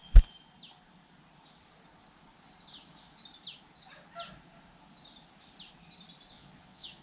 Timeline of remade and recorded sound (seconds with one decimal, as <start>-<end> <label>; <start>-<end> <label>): 0.0-6.3 recorded; 6.3-7.0 remade